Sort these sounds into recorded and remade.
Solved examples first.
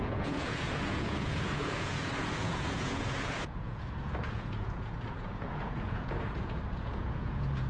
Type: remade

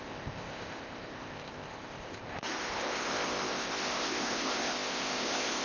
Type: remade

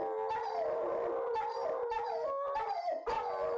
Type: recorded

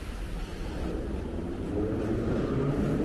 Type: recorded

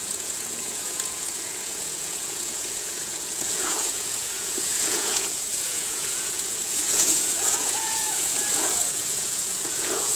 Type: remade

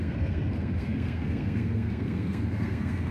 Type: remade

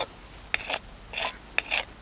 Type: recorded